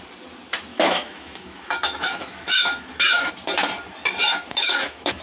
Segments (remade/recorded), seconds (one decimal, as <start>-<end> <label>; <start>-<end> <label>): 0.0-0.7 recorded; 0.7-3.3 remade; 3.3-4.2 recorded; 4.2-5.2 remade